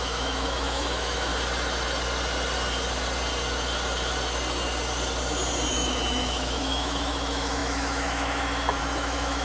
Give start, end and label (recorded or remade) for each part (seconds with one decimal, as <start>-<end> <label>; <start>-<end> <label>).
0.0-1.3 remade; 1.3-5.7 recorded; 5.7-9.4 remade